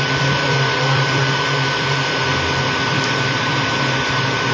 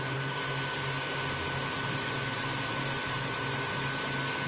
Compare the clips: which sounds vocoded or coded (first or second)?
first